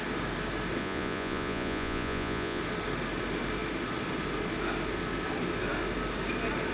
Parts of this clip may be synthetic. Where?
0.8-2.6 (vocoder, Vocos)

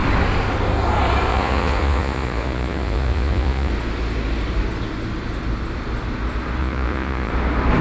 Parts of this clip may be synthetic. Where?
1.3-3.7 (vocoder, Vocos); 6.6-7.3

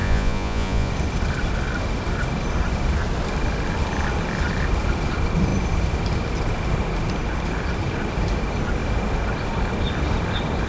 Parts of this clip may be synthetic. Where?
0.0-0.9 (vocoder, Vocos)

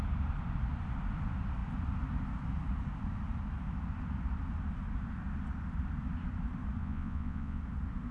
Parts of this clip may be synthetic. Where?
6.8-7.6 (vocoder, Vocos)